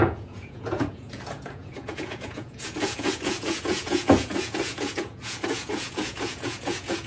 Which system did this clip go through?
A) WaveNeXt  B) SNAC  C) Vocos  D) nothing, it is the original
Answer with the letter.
C